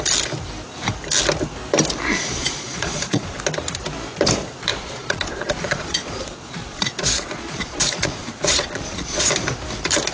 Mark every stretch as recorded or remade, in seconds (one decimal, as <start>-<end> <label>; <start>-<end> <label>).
0.0-2.1 recorded; 2.1-3.4 remade; 3.4-4.7 recorded; 4.7-9.3 remade; 9.3-10.1 recorded

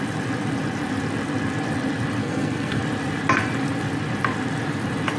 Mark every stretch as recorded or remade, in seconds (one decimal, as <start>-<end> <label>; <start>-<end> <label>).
0.0-2.2 recorded; 2.2-2.8 remade; 2.8-5.2 recorded

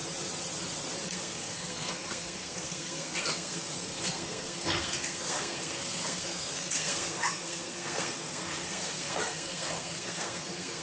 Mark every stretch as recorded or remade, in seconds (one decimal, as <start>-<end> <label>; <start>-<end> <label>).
0.0-1.0 recorded; 1.0-10.8 remade